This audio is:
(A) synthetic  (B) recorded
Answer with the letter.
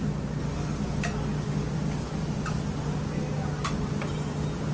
B